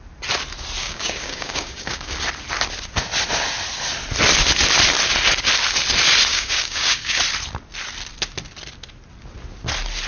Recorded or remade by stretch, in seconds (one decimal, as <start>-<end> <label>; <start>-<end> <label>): 0.0-0.8 recorded; 0.8-2.1 remade; 2.1-6.3 recorded; 6.3-7.2 remade; 7.2-10.1 recorded